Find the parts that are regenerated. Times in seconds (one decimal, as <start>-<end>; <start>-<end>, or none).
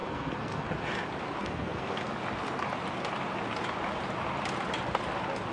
0.0-0.7; 1.4-2.1